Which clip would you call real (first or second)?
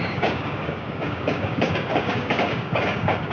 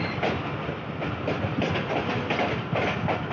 second